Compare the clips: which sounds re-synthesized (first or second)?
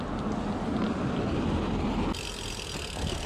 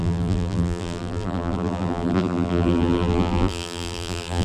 second